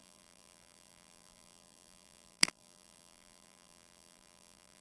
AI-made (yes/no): yes